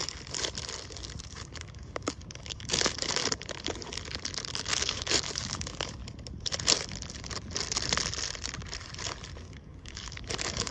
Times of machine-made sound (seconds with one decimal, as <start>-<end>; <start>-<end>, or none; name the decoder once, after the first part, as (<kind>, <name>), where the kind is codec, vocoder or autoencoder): 1.2-3.2 (codec, DAC); 4.7-6.0; 9.4-10.7